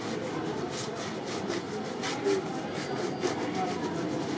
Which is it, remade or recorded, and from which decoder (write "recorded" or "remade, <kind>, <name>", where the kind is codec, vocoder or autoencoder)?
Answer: recorded